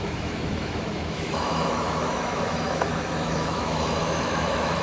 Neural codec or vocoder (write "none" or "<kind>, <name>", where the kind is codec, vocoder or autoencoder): autoencoder, DAC-VAE